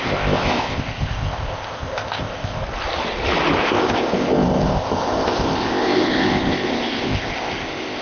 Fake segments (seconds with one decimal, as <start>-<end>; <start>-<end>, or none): 0.0-2.6; 3.6-8.0